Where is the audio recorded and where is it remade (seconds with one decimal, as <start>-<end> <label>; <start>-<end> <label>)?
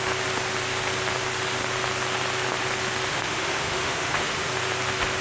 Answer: 0.0-3.1 recorded; 3.1-4.5 remade; 4.5-5.2 recorded